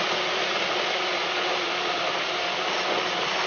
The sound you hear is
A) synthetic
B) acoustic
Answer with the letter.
B